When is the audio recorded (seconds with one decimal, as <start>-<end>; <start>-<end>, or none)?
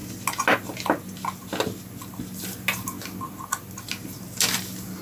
0.0-5.0